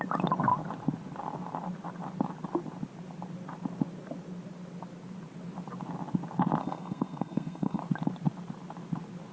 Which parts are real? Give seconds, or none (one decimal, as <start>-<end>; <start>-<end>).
0.0-6.6; 7.8-9.3